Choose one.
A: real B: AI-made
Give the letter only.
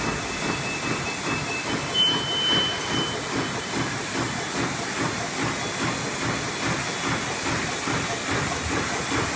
A